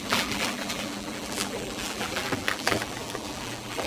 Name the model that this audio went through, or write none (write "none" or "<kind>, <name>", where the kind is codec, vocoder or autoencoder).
vocoder, BigVGAN v2